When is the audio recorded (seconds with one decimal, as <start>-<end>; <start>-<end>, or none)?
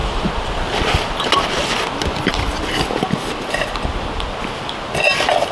0.0-5.5